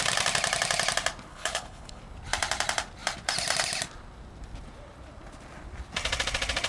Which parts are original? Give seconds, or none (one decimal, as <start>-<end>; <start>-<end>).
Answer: 0.0-1.3; 2.0-6.7